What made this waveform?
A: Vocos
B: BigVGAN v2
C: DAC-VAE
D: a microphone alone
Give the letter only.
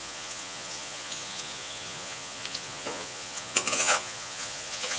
A